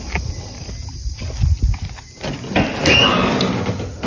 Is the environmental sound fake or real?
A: real